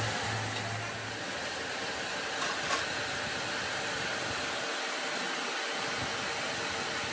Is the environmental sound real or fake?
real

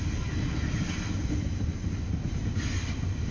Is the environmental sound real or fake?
real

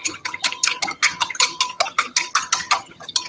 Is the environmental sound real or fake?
fake